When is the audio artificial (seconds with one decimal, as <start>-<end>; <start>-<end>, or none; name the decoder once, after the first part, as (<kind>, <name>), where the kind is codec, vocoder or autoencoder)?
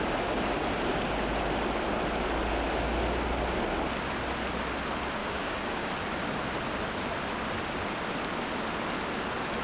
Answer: 5.2-5.9 (codec, DAC)